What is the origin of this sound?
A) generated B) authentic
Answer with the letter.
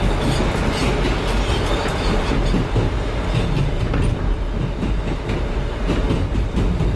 B